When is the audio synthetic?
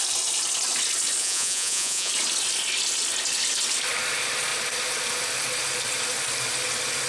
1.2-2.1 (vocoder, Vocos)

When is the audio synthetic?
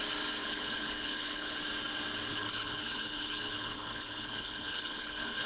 0.4-1.6 (codec, HILCodec); 2.3-5.5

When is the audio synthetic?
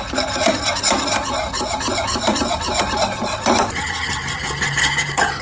4.8-5.4 (codec, DAC)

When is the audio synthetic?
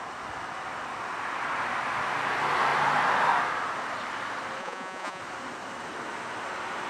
4.6-5.2 (vocoder, Vocos)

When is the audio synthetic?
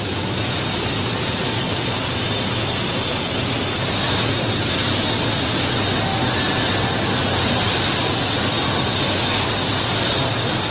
none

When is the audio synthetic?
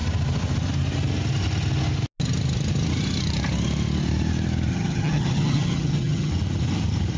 4.7-6.3 (vocoder, HiFi-GAN)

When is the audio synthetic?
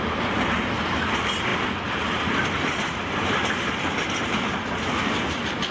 none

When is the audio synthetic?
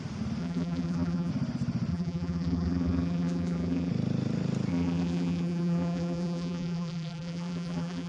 0.4-1.3 (vocoder, BigVGAN v2); 1.9-3.9; 4.7-8.1